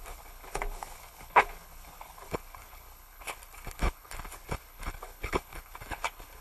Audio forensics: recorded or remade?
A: remade